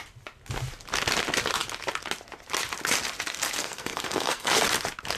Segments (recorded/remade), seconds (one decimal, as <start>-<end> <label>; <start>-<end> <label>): 0.0-3.6 recorded; 3.6-4.6 remade; 4.6-5.2 recorded